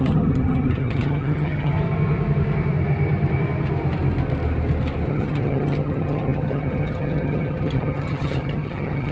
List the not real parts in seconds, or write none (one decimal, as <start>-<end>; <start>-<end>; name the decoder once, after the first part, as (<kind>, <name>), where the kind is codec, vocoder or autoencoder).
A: 0.0-1.7 (vocoder, HiFi-GAN); 5.1-9.1